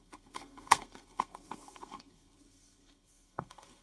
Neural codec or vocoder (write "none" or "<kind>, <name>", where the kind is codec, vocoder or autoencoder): codec, SNAC